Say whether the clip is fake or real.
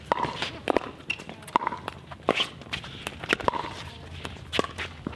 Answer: real